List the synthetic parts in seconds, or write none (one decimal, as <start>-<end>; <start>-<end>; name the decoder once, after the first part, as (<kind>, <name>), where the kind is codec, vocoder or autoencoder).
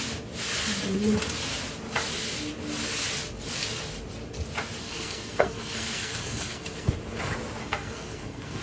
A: 4.8-6.9 (codec, SNAC); 7.6-8.6